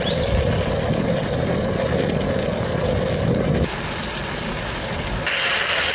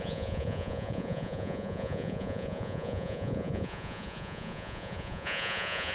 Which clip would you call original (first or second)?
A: first